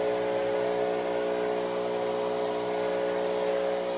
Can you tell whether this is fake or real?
real